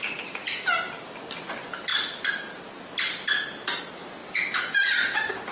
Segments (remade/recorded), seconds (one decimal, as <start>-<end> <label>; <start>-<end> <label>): 0.0-5.5 recorded

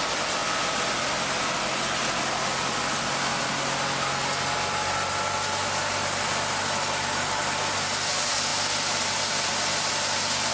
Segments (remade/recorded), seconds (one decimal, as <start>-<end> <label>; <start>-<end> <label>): 0.0-8.5 recorded; 8.5-9.9 remade; 9.9-10.5 recorded

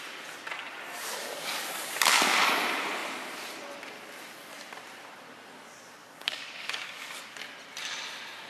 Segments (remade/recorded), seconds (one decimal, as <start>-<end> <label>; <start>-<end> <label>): 0.0-1.2 recorded; 1.2-2.4 remade; 2.4-6.0 recorded; 6.0-7.2 remade; 7.2-8.5 recorded

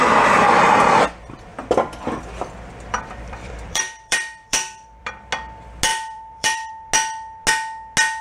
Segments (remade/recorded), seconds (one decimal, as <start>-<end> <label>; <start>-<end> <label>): 0.0-1.5 recorded; 1.5-5.1 remade; 5.1-5.9 recorded; 5.9-6.7 remade; 6.7-8.2 recorded

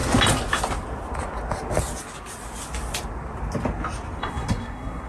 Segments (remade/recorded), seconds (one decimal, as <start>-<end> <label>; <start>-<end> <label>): 0.0-4.2 recorded; 4.2-5.1 remade

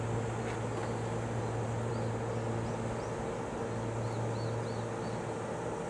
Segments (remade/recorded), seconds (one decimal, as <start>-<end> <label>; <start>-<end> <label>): 0.0-5.9 recorded

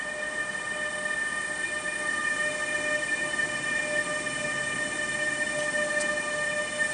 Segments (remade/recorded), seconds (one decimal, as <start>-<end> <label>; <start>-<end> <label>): 0.0-6.9 recorded